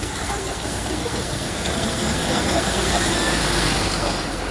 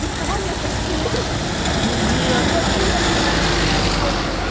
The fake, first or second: first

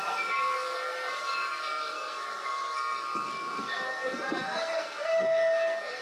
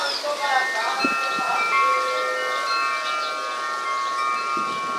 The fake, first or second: first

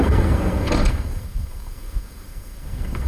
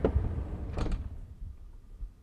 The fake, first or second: first